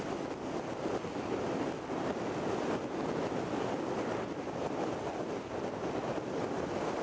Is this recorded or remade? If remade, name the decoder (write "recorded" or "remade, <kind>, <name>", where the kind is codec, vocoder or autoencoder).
recorded